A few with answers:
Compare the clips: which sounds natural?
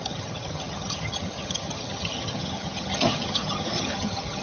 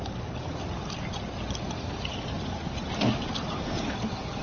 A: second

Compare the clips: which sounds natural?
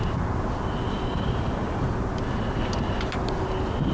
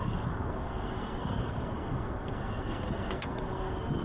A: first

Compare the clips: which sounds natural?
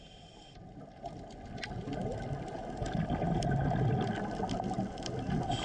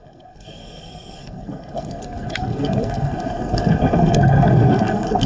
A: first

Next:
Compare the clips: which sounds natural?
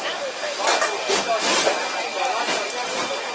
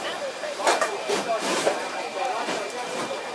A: first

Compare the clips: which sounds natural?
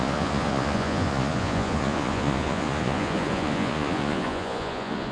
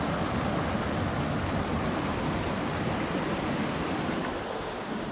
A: second